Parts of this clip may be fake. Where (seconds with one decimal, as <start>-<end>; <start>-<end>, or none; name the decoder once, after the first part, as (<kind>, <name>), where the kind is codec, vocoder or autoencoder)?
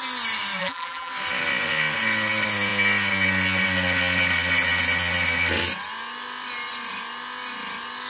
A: 0.6-1.1 (vocoder, BigVGAN v2)